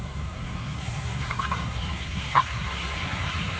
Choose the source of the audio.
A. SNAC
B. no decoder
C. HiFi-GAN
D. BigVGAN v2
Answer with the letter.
A